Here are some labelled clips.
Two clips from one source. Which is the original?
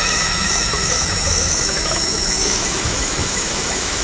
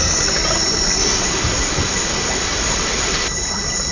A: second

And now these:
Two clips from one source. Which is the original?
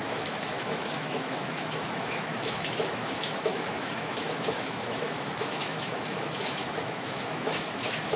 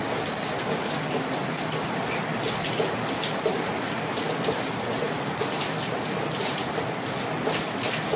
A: second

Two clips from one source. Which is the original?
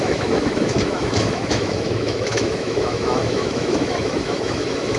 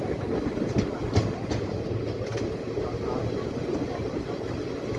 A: second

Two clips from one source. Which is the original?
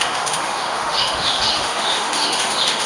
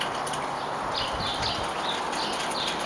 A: second